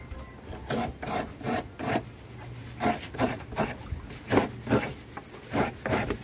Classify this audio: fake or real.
real